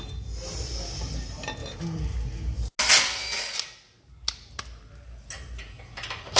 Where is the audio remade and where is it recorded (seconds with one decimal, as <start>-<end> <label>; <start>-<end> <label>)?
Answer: 0.0-6.4 recorded